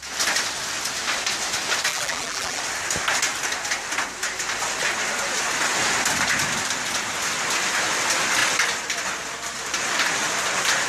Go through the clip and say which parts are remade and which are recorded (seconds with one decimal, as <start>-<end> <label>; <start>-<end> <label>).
0.0-1.9 recorded; 1.9-2.6 remade; 2.6-10.9 recorded